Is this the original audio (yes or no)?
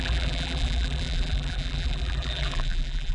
no